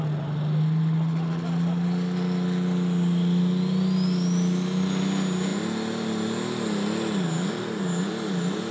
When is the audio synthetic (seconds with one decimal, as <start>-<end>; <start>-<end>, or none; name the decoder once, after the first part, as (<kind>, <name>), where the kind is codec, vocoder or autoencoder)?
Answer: none